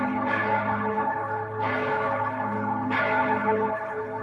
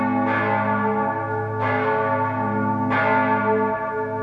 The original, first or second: second